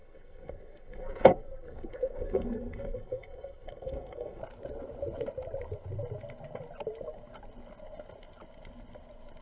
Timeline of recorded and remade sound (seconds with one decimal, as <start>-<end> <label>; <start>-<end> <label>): 0.0-4.4 remade; 4.4-9.4 recorded